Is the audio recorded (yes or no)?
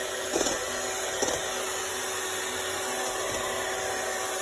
yes